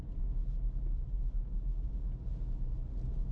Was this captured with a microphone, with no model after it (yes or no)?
yes